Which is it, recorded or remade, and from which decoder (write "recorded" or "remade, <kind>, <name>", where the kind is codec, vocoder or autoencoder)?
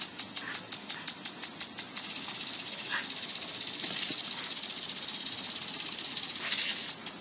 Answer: recorded